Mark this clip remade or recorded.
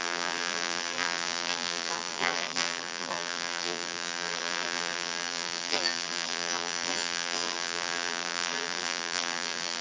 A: remade